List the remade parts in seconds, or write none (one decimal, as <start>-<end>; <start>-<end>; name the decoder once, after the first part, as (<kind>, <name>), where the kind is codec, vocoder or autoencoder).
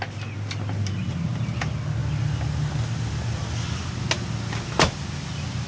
none